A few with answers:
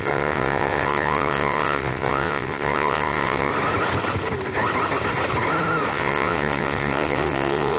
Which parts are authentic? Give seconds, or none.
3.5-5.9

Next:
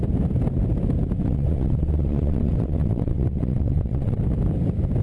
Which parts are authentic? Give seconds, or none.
0.0-1.2; 4.2-5.0

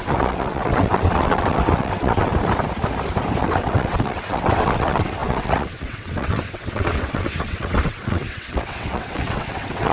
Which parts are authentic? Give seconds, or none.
2.3-3.4